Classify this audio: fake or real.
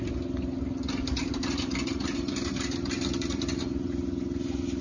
real